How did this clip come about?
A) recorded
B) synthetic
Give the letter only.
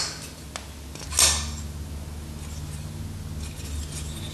A